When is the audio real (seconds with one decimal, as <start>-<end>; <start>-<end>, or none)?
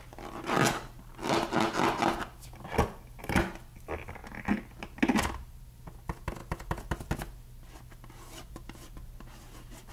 0.0-9.9